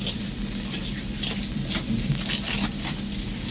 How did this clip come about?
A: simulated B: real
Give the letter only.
B